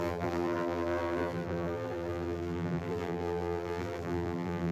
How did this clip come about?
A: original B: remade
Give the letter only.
B